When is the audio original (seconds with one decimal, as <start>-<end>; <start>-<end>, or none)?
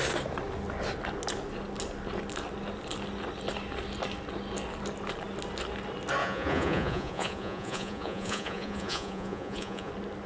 0.0-6.2; 9.9-10.3